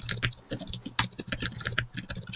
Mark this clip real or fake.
real